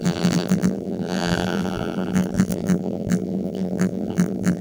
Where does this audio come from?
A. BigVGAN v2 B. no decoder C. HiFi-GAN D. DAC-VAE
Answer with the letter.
A